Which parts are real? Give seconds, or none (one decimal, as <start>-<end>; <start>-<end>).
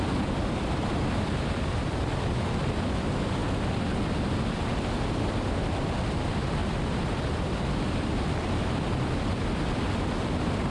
3.4-5.1; 6.6-7.2